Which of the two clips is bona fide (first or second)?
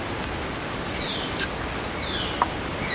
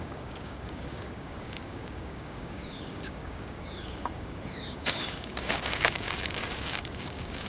first